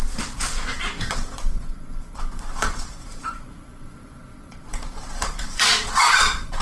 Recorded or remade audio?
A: remade